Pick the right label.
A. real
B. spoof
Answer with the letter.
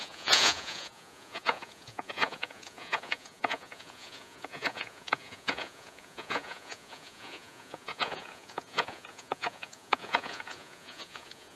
B